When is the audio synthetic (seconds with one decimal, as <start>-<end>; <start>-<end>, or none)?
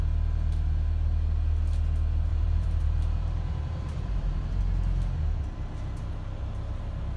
2.3-4.6